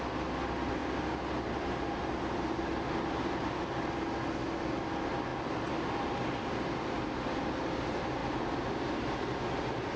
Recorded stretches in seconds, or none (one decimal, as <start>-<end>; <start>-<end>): 0.0-10.0